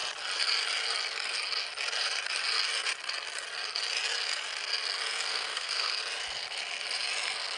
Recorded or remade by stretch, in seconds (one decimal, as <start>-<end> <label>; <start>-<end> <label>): 0.0-5.3 recorded; 5.3-5.9 remade; 5.9-7.6 recorded